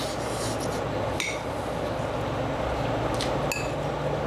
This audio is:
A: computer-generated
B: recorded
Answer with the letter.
B